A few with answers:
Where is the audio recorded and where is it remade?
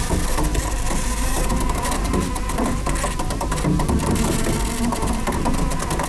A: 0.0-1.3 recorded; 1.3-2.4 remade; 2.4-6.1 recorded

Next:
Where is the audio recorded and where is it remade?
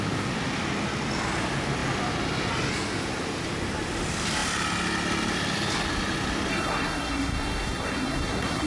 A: 0.0-6.5 recorded; 6.5-8.7 remade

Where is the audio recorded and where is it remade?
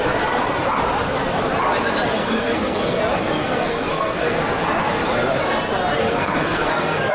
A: 0.0-2.2 recorded; 2.2-3.0 remade; 3.0-3.4 recorded; 3.4-4.4 remade; 4.4-6.0 recorded; 6.0-7.1 remade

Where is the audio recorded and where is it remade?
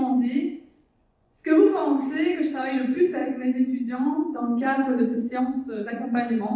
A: 0.0-1.8 remade; 1.8-2.4 recorded; 2.4-6.6 remade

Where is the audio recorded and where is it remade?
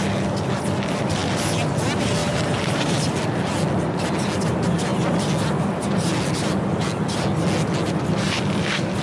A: 0.0-2.2 recorded; 2.2-3.0 remade; 3.0-9.0 recorded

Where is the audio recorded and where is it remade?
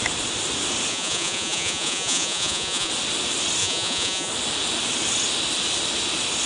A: 0.0-0.9 recorded; 0.9-2.9 remade; 2.9-3.6 recorded; 3.6-4.3 remade; 4.3-6.5 recorded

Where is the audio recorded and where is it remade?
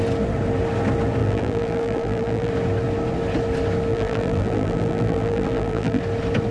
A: 0.0-1.2 recorded; 1.2-2.5 remade; 2.5-3.9 recorded; 3.9-6.0 remade; 6.0-6.5 recorded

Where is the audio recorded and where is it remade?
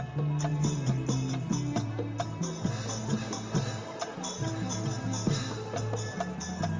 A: 0.0-6.8 recorded